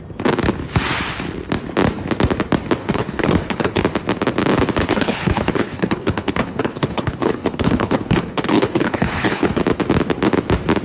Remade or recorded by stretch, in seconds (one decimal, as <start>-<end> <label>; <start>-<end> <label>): 0.0-2.8 recorded; 2.8-3.8 remade; 3.8-4.8 recorded; 4.8-9.6 remade; 9.6-10.8 recorded